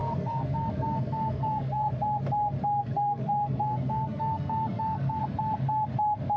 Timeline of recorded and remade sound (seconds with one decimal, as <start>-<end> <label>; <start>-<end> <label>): 0.0-1.9 remade; 1.9-2.8 recorded; 2.8-5.2 remade; 5.2-6.4 recorded